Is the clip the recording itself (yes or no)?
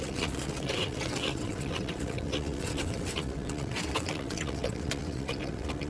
no